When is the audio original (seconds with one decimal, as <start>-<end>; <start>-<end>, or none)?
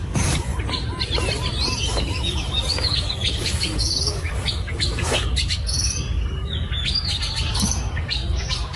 0.5-2.0